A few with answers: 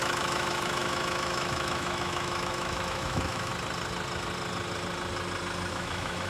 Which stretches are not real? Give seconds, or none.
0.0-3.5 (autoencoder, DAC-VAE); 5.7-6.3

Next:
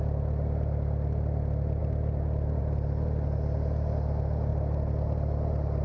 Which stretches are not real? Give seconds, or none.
4.5-5.8 (vocoder, BigVGAN v2)

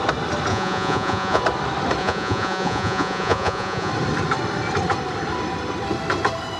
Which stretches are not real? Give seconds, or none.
0.5-1.4 (vocoder, Vocos); 2.0-3.9